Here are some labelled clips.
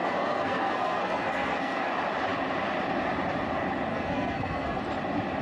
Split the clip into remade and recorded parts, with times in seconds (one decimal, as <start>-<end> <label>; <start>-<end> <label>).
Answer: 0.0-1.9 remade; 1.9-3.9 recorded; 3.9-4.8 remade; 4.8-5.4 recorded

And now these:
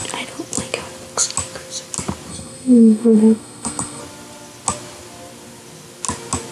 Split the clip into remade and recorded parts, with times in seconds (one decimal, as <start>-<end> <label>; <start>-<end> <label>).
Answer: 0.0-2.3 recorded; 2.3-4.0 remade; 4.0-6.5 recorded

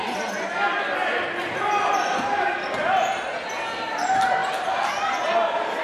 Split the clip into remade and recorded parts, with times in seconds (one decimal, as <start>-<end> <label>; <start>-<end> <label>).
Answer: 0.0-5.8 recorded

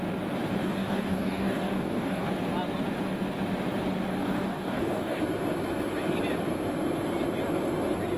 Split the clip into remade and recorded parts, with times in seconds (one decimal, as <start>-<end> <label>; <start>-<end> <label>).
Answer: 0.0-0.6 recorded; 0.6-2.3 remade; 2.3-4.1 recorded; 4.1-5.2 remade; 5.2-8.2 recorded